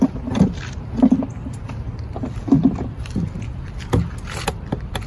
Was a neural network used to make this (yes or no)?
yes